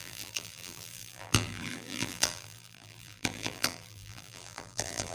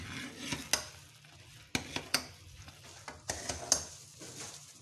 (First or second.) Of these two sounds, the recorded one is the second